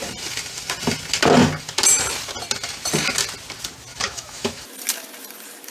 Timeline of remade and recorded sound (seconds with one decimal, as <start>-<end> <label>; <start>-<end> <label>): 0.0-3.9 recorded; 3.9-4.6 remade; 4.6-5.7 recorded